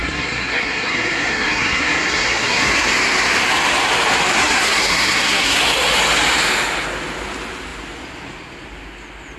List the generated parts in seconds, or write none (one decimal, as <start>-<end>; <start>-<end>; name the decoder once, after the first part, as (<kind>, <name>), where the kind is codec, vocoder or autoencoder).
0.0-2.9 (codec, SNAC); 4.4-5.6